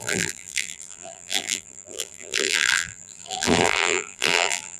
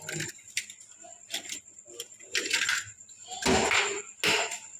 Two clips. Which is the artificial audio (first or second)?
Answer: first